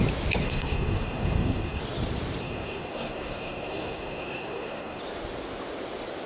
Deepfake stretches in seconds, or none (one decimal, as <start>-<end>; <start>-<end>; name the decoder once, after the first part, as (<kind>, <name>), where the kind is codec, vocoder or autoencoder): 0.4-1.8 (codec, SNAC); 2.4-5.0